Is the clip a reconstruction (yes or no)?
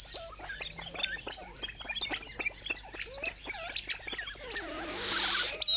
no